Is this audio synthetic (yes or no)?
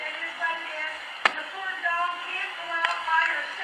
yes